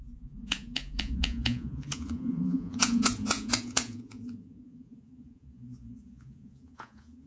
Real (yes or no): no